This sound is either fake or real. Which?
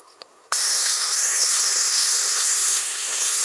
fake